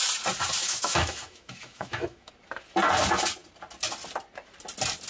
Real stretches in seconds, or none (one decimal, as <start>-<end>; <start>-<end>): 0.0-0.6; 2.3-5.1